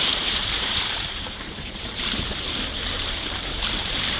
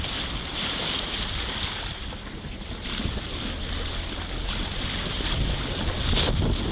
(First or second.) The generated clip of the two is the first